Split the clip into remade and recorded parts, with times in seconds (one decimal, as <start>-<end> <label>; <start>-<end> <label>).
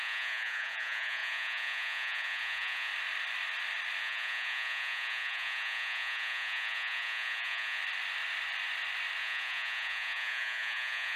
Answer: 0.0-2.9 remade; 2.9-4.0 recorded; 4.0-7.8 remade; 7.8-9.2 recorded; 9.2-11.2 remade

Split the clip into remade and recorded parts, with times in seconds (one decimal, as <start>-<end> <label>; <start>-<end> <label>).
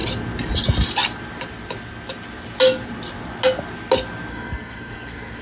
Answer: 0.0-4.3 recorded; 4.3-5.4 remade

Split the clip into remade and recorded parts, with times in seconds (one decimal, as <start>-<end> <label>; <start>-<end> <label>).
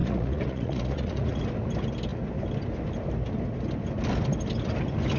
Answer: 0.0-1.4 remade; 1.4-5.2 recorded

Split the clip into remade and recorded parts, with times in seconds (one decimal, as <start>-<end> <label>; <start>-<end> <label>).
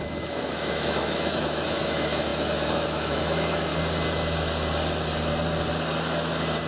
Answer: 0.0-3.7 remade; 3.7-6.7 recorded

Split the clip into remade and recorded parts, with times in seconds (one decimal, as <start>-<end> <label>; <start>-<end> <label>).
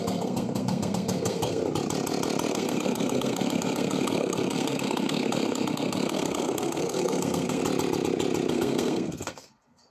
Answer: 0.0-1.6 remade; 1.6-2.5 recorded; 2.5-7.6 remade; 7.6-8.5 recorded; 8.5-9.9 remade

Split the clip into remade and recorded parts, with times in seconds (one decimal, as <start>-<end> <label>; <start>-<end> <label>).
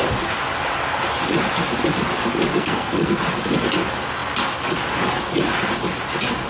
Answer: 0.0-2.5 recorded; 2.5-3.2 remade; 3.2-6.5 recorded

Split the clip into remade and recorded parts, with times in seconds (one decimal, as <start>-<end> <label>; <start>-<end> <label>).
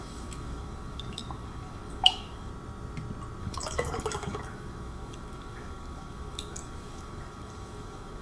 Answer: 0.0-2.5 remade; 2.5-3.4 recorded; 3.4-8.2 remade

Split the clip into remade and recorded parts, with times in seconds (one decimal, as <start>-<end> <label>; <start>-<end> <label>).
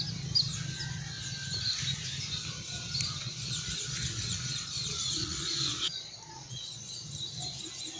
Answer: 0.0-3.2 recorded; 3.2-7.1 remade; 7.1-8.0 recorded